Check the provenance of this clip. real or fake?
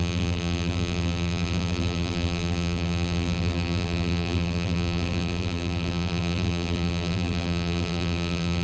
fake